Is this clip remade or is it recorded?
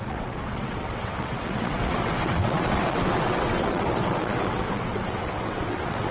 remade